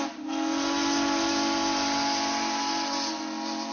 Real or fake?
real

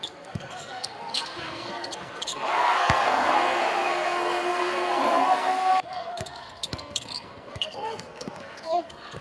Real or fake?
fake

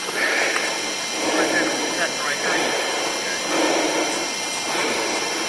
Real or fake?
real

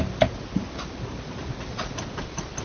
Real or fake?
real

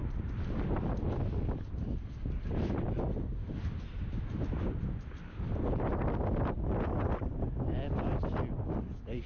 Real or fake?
real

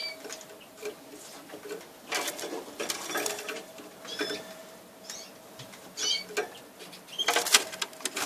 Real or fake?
real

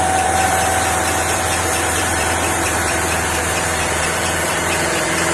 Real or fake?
fake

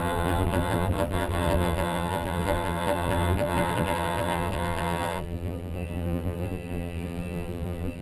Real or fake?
fake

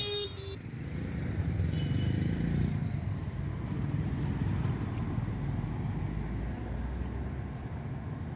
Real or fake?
real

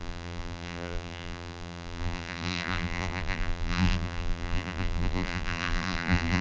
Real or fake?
fake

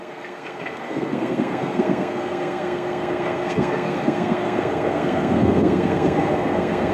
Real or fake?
fake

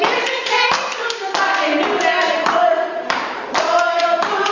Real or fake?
real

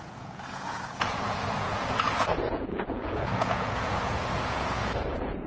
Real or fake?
fake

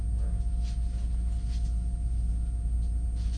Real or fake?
real